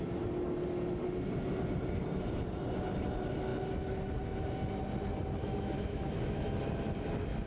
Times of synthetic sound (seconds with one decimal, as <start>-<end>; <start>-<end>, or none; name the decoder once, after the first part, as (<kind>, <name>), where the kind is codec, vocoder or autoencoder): 5.4-6.4 (autoencoder, DAC-VAE)